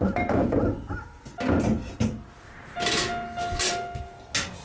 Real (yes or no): yes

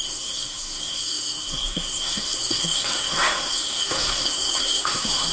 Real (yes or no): no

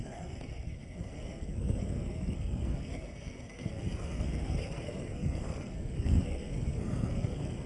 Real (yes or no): no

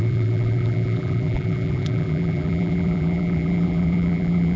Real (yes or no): no